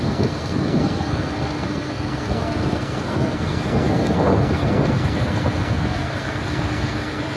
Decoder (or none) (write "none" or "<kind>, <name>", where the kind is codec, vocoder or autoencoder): codec, SNAC